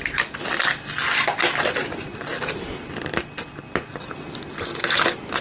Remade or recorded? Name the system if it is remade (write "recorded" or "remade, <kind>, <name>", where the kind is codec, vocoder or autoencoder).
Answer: recorded